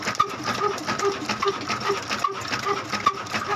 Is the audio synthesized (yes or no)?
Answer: no